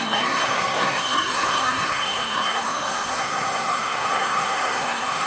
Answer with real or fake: fake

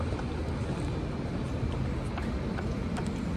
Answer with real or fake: real